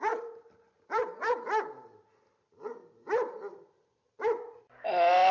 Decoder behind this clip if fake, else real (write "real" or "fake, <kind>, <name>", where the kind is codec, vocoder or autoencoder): real